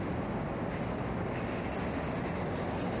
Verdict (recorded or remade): recorded